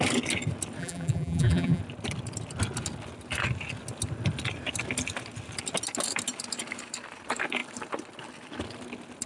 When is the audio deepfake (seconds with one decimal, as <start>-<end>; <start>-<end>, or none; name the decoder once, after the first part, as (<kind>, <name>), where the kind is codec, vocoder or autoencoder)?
0.8-1.8 (vocoder, BigVGAN v2)